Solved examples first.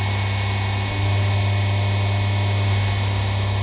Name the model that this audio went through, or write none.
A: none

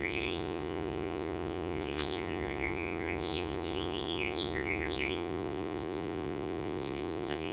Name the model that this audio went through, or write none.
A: vocoder, Vocos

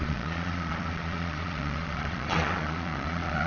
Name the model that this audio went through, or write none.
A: vocoder, Vocos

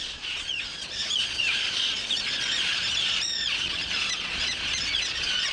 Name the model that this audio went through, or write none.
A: vocoder, Vocos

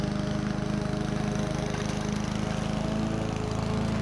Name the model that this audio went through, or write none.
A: none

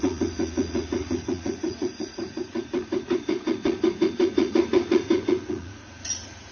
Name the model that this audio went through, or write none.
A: vocoder, Vocos